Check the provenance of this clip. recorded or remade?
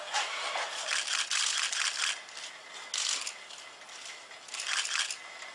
recorded